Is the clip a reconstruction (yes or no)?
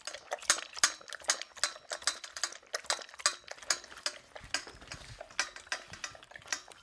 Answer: no